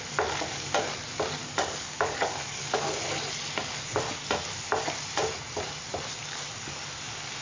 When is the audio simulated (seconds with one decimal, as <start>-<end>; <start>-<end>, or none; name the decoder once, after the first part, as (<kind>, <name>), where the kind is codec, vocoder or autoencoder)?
1.4-2.9 (codec, DAC)